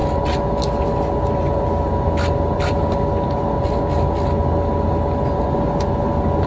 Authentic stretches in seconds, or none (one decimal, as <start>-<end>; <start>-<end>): 0.0-6.5